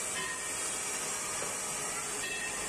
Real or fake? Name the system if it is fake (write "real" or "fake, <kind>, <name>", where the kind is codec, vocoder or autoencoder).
real